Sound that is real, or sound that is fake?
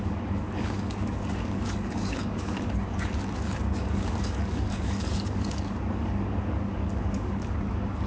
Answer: fake